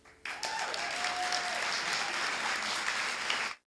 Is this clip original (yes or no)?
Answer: yes